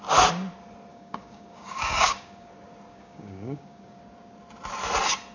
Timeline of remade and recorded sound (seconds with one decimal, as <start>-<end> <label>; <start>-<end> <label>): 0.0-0.9 recorded; 0.9-2.5 remade; 2.5-2.9 recorded; 2.9-4.0 remade; 4.0-5.3 recorded